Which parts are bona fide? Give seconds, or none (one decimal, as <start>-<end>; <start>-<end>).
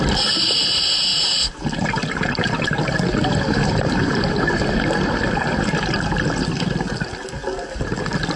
0.0-8.4